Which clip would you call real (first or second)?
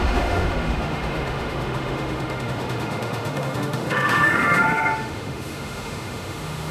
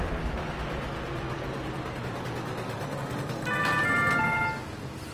second